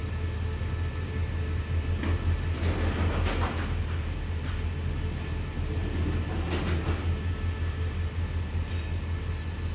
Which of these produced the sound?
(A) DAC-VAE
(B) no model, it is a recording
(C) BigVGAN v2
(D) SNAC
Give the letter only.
B